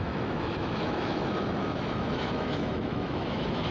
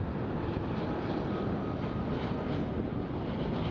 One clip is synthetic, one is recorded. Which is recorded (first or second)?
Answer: second